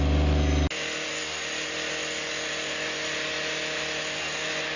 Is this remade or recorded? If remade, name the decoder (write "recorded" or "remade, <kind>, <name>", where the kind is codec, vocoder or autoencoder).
recorded